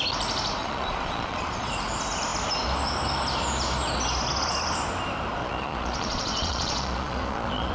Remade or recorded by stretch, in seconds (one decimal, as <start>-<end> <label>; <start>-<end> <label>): 0.0-0.6 recorded; 0.6-1.7 remade; 1.7-5.4 recorded; 5.4-7.7 remade